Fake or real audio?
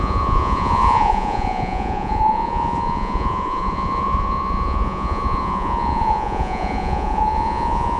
fake